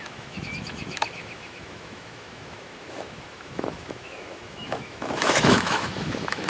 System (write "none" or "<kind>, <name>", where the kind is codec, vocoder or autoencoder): autoencoder, DAC-VAE